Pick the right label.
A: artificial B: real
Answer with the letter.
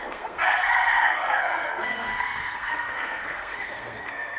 A